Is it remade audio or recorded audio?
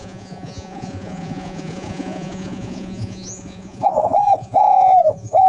remade